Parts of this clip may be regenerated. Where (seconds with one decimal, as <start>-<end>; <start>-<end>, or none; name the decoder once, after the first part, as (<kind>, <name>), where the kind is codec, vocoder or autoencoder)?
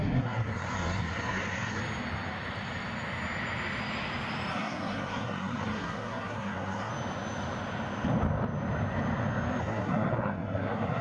0.0-1.8 (codec, SNAC); 4.5-6.9; 9.6-11.0